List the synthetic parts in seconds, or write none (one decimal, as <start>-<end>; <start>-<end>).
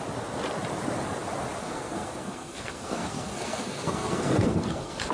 1.6-5.1